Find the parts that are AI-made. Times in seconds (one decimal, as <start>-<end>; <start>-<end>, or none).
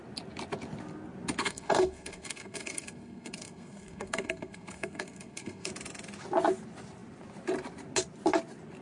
1.4-5.7